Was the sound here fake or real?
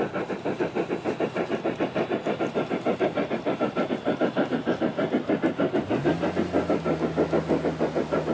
real